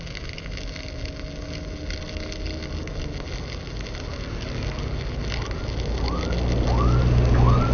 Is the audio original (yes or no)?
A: yes